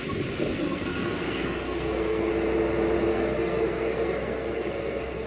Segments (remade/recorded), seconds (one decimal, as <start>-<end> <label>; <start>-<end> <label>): 0.0-0.5 recorded; 0.5-2.3 remade; 2.3-3.1 recorded; 3.1-5.3 remade